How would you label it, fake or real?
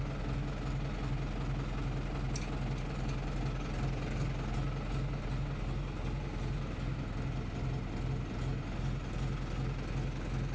real